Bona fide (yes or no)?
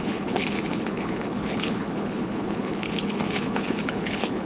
no